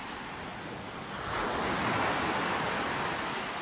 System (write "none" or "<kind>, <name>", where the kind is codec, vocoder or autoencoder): none